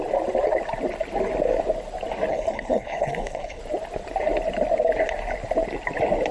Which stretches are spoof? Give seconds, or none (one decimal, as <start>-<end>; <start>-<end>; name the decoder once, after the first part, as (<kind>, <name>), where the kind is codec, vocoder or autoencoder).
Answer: 2.3-3.6 (codec, HILCodec)

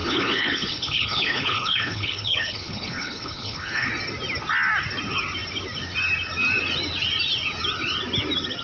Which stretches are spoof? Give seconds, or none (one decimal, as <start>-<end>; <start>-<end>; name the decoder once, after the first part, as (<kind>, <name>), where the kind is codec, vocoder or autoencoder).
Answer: 0.0-3.9 (codec, HILCodec)

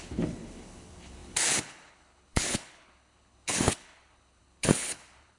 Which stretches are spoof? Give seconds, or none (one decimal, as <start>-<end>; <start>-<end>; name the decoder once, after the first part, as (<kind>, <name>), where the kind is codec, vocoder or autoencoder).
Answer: 0.0-5.4 (codec, HILCodec)

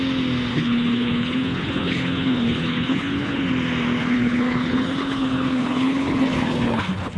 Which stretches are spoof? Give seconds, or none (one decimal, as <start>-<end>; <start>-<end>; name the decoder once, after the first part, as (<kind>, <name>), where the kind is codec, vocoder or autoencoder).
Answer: 0.5-3.5 (codec, HILCodec); 4.0-7.2

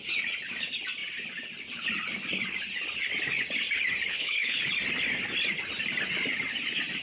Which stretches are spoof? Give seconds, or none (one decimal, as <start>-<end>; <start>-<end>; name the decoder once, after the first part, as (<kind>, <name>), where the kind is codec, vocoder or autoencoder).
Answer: 4.1-4.6 (codec, HILCodec)

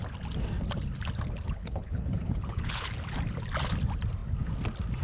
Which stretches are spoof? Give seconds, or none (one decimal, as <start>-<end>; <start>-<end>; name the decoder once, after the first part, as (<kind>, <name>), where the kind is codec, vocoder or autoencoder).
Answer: 1.6-2.9 (codec, HILCodec)

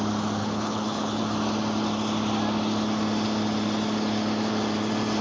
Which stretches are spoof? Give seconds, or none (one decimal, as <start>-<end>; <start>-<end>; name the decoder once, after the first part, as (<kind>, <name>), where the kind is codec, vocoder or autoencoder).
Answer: 0.4-1.2 (codec, HILCodec)